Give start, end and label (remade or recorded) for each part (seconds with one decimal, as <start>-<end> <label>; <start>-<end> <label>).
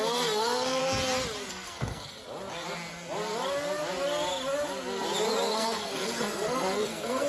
0.0-0.8 remade; 0.8-1.5 recorded; 1.5-2.2 remade; 2.2-5.5 recorded; 5.5-7.3 remade